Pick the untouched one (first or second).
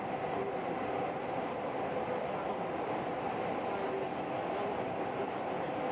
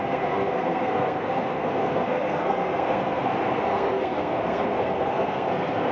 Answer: first